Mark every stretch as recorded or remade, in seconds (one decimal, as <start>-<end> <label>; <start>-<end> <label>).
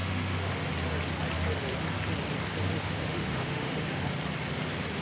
0.0-0.5 remade; 0.5-2.8 recorded; 2.8-4.0 remade; 4.0-5.0 recorded